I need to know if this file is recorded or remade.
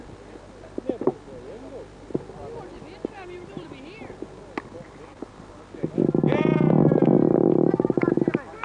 recorded